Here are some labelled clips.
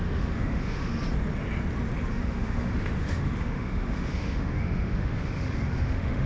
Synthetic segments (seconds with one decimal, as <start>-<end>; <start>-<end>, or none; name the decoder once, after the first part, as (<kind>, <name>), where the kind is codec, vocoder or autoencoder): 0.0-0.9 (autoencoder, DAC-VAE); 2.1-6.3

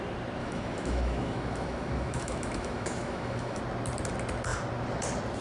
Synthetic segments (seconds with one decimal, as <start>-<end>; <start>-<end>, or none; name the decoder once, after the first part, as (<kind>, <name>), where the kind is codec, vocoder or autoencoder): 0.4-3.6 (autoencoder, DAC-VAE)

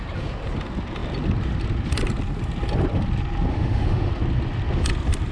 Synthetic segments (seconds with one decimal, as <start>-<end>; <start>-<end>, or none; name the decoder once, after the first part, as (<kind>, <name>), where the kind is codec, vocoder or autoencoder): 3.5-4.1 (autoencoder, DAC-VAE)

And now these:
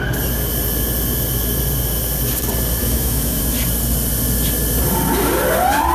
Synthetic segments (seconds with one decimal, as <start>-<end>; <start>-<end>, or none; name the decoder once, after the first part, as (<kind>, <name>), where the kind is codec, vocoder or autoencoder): 2.8-3.4 (autoencoder, DAC-VAE)